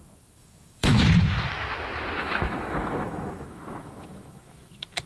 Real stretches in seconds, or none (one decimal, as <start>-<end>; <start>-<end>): 1.0-2.2